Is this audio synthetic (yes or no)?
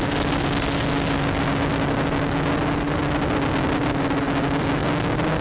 no